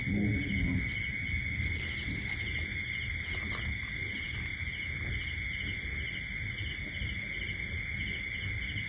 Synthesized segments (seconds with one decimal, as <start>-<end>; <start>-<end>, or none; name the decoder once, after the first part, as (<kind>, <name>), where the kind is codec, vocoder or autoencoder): none